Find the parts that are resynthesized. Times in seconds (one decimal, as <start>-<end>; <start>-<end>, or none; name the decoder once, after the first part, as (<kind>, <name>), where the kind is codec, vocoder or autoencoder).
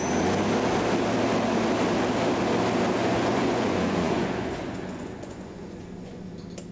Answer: 3.0-6.3 (vocoder, Vocos)